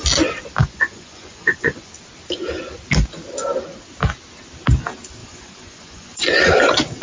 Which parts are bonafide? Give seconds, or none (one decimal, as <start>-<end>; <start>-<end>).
0.0-0.6; 1.9-5.2; 6.5-7.0